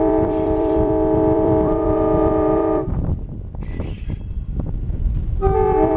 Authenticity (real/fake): fake